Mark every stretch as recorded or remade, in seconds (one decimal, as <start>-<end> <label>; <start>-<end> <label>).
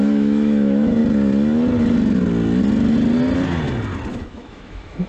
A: 0.0-1.0 remade; 1.0-4.1 recorded; 4.1-5.1 remade